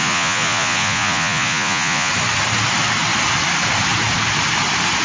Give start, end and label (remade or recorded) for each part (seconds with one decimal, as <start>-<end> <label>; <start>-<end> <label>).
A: 0.0-2.1 remade; 2.1-5.0 recorded